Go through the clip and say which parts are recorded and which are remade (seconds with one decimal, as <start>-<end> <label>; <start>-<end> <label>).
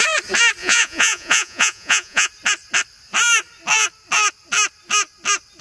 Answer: 0.0-0.6 recorded; 0.6-2.3 remade; 2.3-5.6 recorded